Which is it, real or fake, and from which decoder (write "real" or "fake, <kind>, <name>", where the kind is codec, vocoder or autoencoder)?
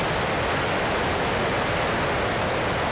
real